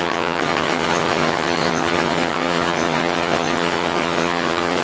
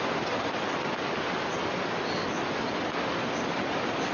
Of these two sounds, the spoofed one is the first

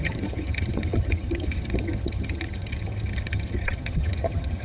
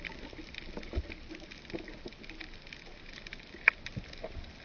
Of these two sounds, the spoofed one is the first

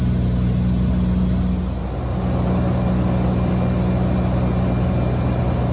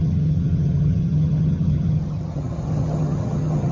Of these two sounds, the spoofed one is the second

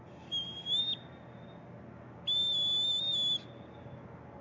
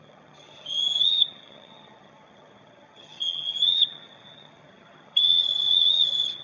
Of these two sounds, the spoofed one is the second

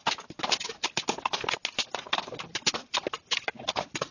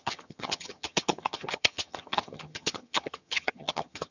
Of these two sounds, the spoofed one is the second